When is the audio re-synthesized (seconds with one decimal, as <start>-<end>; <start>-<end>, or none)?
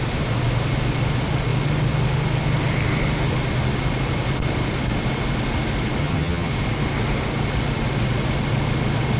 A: 6.0-6.5